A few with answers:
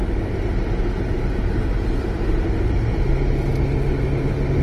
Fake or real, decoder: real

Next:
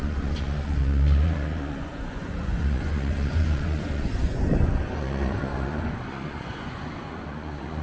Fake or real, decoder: fake, vocoder, Vocos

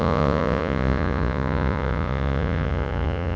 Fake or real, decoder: fake, vocoder, Vocos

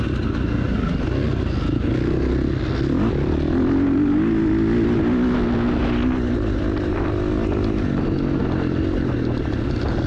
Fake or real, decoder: real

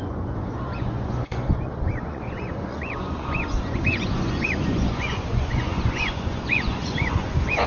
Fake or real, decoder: fake, vocoder, Vocos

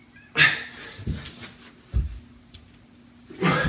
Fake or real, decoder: real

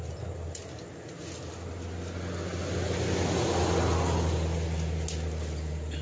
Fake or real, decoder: real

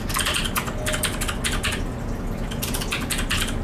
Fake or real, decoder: real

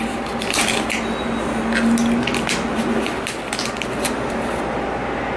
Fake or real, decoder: real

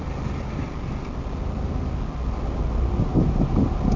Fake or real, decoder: real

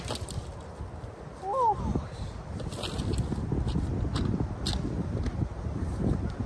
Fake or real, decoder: real